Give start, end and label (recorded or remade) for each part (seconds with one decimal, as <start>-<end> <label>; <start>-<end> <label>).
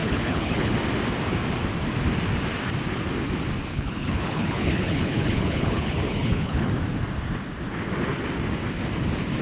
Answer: 0.0-0.7 remade; 0.7-3.7 recorded; 3.7-6.7 remade; 6.7-9.4 recorded